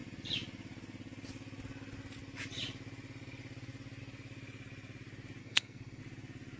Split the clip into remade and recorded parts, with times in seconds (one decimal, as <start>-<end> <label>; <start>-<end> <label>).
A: 0.0-5.4 recorded; 5.4-6.0 remade; 6.0-6.6 recorded